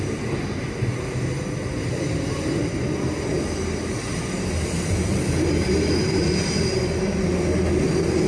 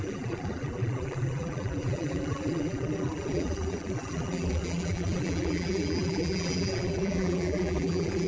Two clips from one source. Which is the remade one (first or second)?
second